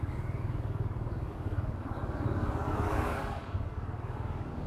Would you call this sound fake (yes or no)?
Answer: yes